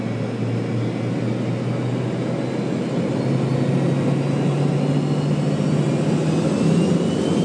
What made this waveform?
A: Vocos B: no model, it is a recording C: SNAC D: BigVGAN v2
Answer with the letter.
B